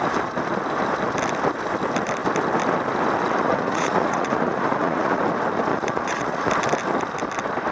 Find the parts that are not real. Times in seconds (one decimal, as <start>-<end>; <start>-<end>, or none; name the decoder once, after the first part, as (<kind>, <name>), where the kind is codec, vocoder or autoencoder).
3.4-5.2 (vocoder, Vocos); 5.7-6.5